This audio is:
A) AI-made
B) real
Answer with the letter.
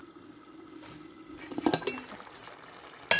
B